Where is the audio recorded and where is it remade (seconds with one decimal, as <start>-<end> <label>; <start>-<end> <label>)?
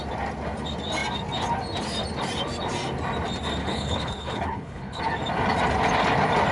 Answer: 0.0-3.6 recorded; 3.6-5.0 remade; 5.0-6.5 recorded